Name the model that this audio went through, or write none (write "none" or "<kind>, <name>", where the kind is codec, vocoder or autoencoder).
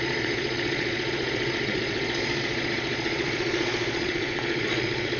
vocoder, Vocos